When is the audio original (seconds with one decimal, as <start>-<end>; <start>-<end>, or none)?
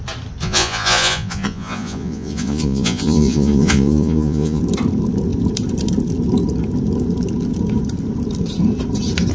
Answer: 0.0-0.4; 4.6-9.3